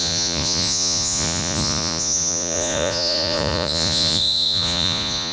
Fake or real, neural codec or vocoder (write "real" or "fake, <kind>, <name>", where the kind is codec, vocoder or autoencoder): fake, vocoder, Vocos